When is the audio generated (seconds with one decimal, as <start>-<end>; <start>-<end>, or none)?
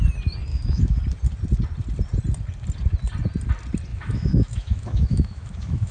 0.5-1.0; 3.9-5.9